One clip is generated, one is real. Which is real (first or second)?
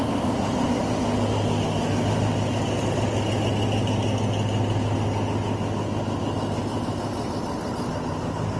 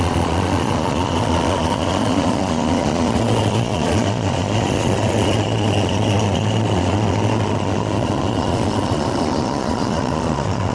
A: first